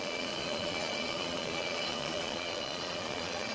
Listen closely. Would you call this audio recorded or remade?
remade